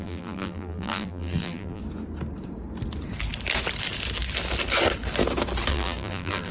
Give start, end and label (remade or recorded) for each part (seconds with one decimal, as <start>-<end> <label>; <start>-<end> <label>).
0.0-1.8 remade; 1.8-5.7 recorded; 5.7-6.5 remade